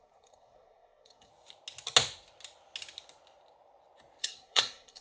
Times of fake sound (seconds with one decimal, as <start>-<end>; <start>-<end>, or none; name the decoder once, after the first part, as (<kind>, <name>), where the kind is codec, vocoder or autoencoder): 0.0-1.3 (codec, SNAC); 4.2-5.0